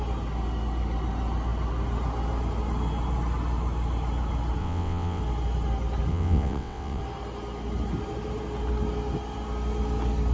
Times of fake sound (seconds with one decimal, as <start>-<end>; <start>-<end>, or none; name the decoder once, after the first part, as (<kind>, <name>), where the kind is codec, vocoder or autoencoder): 4.6-5.2 (vocoder, WaveNeXt); 6.1-7.0